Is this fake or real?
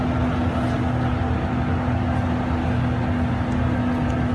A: real